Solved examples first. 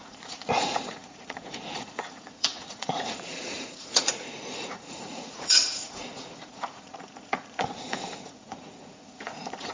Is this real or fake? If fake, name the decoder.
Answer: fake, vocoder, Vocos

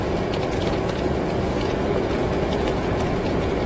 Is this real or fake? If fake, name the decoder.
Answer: fake, vocoder, Vocos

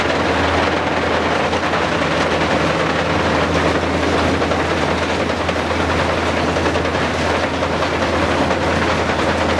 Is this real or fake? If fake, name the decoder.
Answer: real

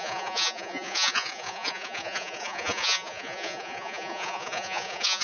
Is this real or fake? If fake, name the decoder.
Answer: fake, vocoder, Vocos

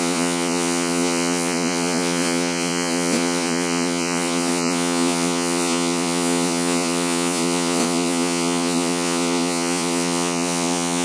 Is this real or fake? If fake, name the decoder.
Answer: fake, vocoder, Vocos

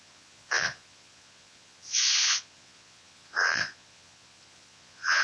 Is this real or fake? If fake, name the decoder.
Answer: fake, vocoder, Vocos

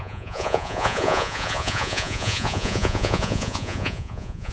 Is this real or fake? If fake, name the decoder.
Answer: fake, vocoder, Vocos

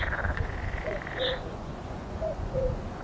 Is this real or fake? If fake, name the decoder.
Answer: fake, vocoder, Vocos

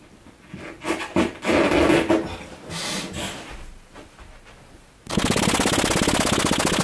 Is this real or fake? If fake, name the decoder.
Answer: real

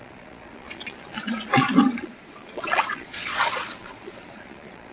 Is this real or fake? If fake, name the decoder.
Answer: fake, vocoder, Vocos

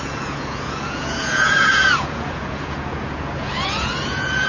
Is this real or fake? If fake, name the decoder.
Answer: fake, vocoder, Vocos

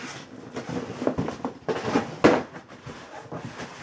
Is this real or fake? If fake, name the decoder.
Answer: real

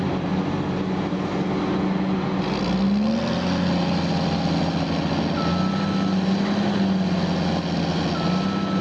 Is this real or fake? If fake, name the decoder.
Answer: real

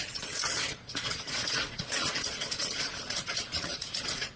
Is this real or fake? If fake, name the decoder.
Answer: fake, vocoder, Vocos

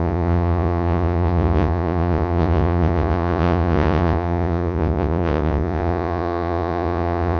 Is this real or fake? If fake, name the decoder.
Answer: fake, vocoder, Vocos